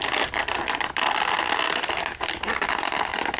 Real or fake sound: real